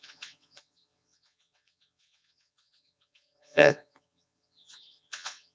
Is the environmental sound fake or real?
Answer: fake